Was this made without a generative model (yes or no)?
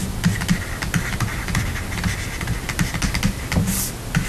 yes